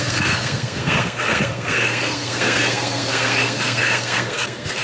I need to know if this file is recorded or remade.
remade